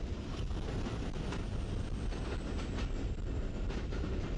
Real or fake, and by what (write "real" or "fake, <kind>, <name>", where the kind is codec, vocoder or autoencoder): real